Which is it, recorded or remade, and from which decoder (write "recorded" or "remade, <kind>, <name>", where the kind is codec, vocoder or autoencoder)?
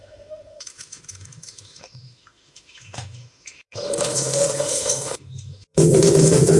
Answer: remade, autoencoder, DAC-VAE